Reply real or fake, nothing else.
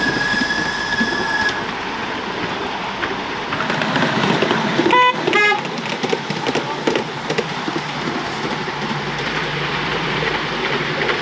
real